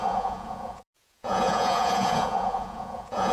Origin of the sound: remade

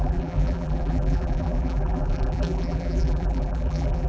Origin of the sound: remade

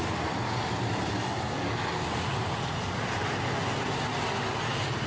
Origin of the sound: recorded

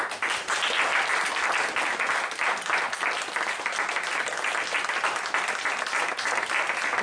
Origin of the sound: recorded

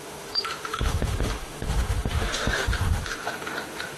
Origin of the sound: remade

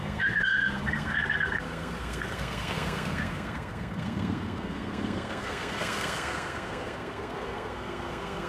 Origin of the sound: remade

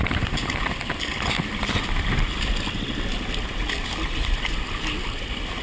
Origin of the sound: recorded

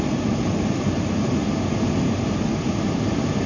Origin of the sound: recorded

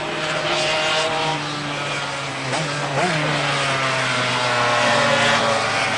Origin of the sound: recorded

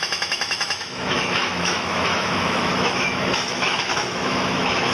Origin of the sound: remade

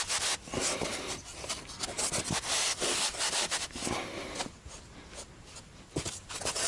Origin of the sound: recorded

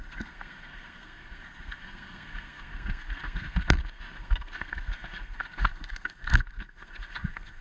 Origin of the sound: remade